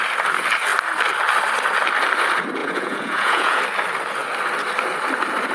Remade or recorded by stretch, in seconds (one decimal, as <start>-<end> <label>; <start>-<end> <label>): 0.0-2.6 recorded; 2.6-3.6 remade; 3.6-5.5 recorded